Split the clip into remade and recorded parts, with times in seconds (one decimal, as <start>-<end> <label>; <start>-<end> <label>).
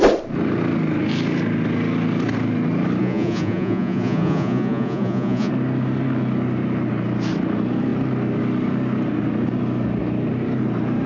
0.0-3.0 recorded; 3.0-5.5 remade; 5.5-11.1 recorded